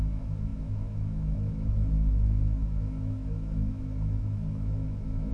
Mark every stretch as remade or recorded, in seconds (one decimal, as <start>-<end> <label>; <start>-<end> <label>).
0.0-5.3 remade